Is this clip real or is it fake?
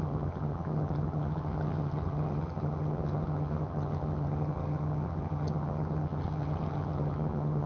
fake